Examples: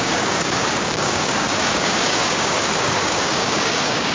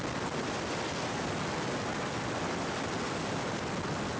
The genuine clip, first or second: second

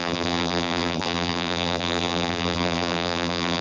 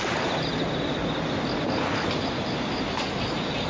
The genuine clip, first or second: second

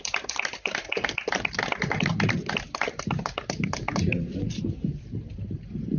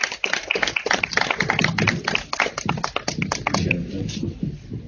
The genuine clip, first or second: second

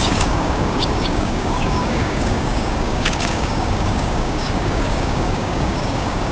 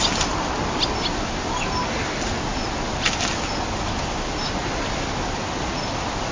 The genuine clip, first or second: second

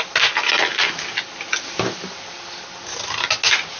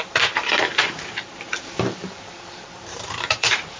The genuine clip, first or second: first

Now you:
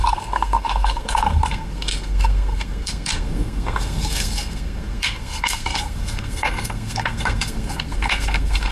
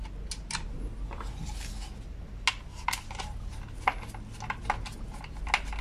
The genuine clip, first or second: second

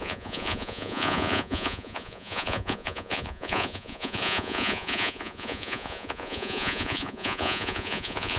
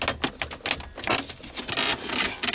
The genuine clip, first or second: second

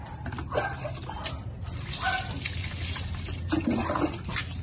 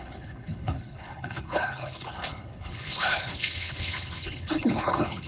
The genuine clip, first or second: first